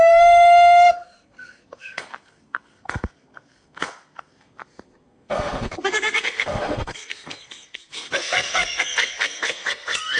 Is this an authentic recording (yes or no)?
no